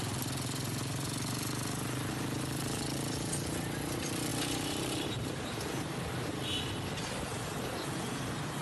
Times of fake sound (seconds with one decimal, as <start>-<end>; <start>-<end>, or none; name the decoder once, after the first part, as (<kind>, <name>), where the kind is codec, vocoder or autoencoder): 4.3-6.6 (vocoder, BigVGAN v2)